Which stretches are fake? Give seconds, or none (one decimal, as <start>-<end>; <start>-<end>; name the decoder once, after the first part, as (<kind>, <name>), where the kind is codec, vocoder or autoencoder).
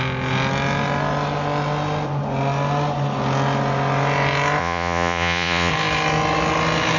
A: 4.6-5.7 (vocoder, Vocos)